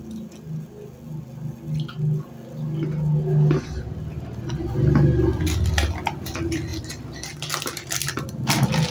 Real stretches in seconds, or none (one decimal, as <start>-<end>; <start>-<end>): 0.0-8.9